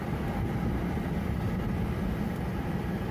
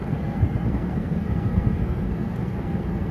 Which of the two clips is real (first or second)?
first